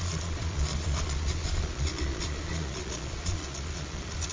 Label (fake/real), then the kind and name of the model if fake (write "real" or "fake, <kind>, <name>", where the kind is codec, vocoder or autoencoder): fake, vocoder, Vocos